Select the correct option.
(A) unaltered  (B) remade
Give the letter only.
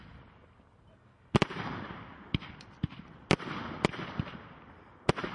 A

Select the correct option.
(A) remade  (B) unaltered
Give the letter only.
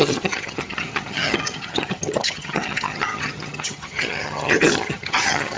A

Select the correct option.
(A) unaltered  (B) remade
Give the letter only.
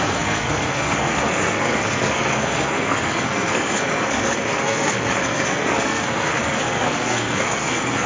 B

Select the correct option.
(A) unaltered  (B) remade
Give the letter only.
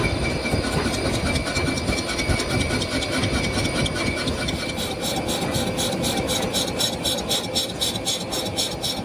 A